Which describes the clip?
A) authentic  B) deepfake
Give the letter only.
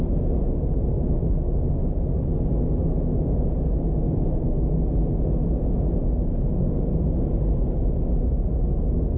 A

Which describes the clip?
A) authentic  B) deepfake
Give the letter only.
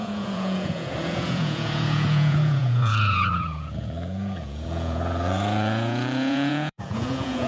B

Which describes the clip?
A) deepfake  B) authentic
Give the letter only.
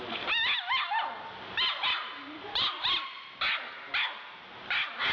B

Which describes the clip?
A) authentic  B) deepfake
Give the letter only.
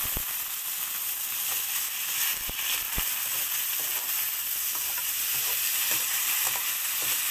A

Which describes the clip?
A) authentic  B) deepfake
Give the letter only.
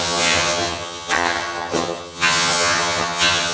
B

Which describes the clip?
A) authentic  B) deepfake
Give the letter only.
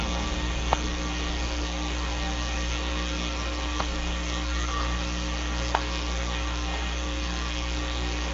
B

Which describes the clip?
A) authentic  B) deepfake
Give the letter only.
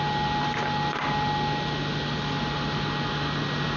A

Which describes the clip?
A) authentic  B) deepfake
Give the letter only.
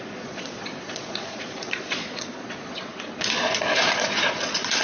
B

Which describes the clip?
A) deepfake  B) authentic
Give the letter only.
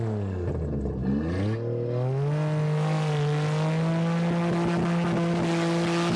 B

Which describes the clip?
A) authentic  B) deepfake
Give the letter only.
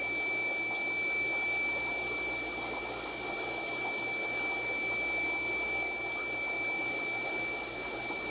A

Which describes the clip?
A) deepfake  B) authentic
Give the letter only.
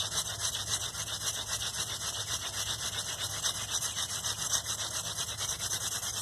B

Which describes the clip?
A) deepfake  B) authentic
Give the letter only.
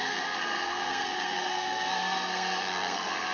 A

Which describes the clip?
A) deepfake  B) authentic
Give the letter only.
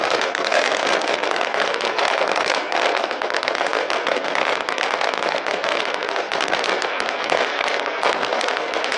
A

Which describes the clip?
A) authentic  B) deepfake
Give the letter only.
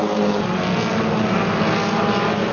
A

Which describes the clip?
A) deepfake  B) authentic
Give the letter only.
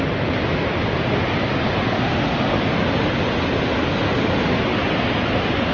B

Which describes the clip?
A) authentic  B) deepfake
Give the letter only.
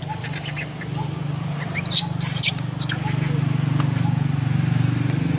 A